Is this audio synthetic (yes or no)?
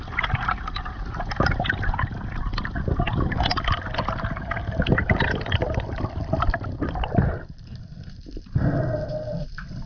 no